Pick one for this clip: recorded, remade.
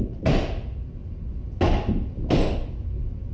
recorded